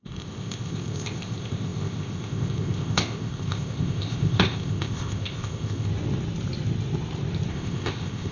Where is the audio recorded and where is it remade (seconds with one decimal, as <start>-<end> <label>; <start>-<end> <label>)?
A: 0.0-5.9 remade; 5.9-7.5 recorded; 7.5-8.3 remade